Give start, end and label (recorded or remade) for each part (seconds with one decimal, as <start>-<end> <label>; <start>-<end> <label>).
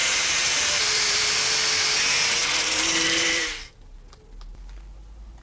0.0-1.3 remade; 1.3-2.4 recorded; 2.4-3.7 remade; 3.7-5.4 recorded